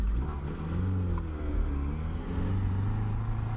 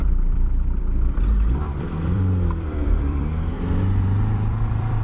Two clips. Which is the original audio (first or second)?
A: first